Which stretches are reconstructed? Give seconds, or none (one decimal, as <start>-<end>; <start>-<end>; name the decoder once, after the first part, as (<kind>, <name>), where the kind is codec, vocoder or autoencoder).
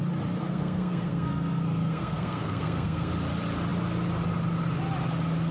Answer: 0.4-3.1 (codec, SNAC)